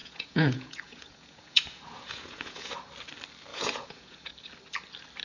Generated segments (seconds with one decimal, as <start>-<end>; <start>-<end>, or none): 0.0-2.7; 3.5-4.3